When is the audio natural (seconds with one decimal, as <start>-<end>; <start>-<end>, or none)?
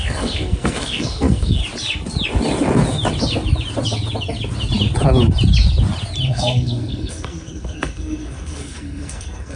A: 1.6-6.3